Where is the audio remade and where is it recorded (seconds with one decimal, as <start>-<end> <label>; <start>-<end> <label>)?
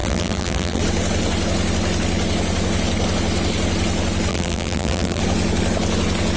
0.0-0.8 remade; 0.8-4.3 recorded; 4.3-5.2 remade; 5.2-6.4 recorded